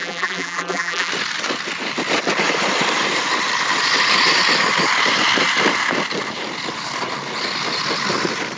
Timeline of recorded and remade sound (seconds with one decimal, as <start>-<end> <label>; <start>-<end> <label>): 0.0-1.1 remade; 1.1-8.6 recorded